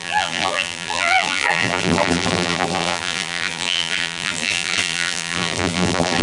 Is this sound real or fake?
fake